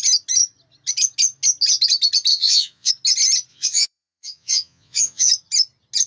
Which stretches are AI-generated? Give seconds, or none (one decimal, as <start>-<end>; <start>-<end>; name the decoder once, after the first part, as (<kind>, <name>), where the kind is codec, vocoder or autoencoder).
2.3-2.9 (vocoder, Vocos); 3.5-5.3